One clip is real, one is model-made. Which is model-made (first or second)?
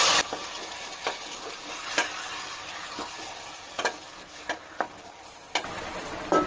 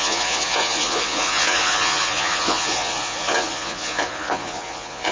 second